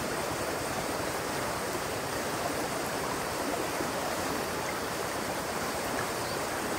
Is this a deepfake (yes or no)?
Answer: yes